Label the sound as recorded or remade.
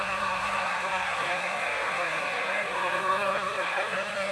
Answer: remade